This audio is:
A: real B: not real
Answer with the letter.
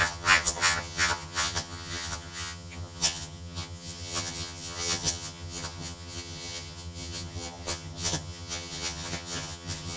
B